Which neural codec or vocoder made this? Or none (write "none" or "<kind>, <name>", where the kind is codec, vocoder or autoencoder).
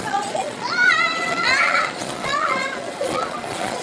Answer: vocoder, Vocos